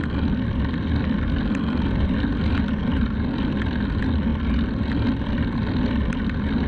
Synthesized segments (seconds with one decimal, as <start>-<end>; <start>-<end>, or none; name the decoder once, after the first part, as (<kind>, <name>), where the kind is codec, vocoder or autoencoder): none